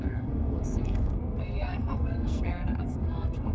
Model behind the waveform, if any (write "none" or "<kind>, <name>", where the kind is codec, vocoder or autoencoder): codec, SNAC